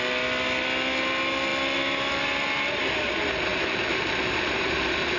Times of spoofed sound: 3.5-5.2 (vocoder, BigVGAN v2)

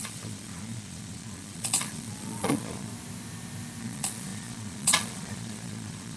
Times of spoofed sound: 0.0-2.9 (vocoder, Vocos); 3.8-6.2